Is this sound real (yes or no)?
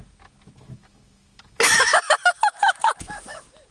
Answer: no